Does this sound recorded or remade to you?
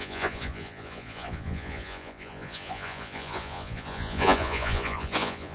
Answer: remade